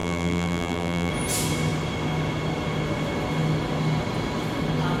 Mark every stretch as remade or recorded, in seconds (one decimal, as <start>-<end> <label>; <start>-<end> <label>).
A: 0.0-1.1 remade; 1.1-5.0 recorded